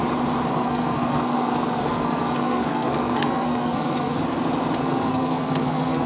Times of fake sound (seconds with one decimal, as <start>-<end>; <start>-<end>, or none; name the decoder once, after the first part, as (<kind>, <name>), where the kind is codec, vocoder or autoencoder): 0.5-4.2 (codec, SNAC); 4.8-6.1